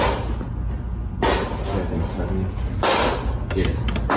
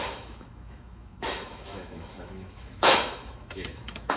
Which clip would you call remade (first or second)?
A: second